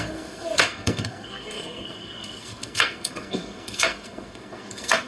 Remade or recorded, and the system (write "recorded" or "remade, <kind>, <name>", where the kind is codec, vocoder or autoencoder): remade, codec, SNAC